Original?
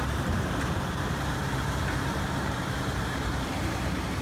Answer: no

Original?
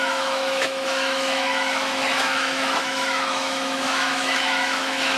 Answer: no